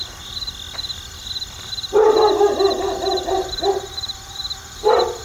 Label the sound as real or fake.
real